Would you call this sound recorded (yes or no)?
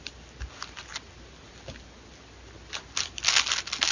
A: yes